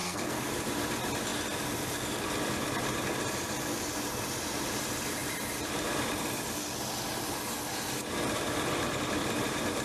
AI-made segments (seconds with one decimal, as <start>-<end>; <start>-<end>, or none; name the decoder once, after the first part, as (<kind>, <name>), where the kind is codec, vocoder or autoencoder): 0.0-0.5 (codec, SNAC)